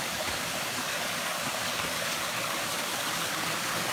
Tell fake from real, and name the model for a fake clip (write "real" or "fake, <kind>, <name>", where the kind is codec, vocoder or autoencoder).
fake, codec, DAC